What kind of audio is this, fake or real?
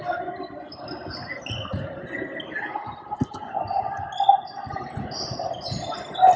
real